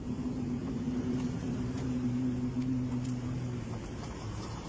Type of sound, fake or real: fake